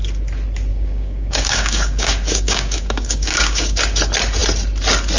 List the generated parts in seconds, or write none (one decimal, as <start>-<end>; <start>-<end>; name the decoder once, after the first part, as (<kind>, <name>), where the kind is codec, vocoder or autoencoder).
0.7-3.8 (codec, DAC)